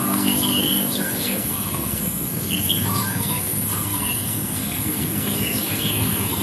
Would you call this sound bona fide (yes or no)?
no